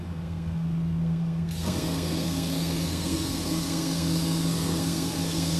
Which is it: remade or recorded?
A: remade